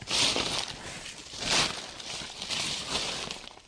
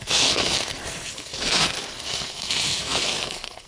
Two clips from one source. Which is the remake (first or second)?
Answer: second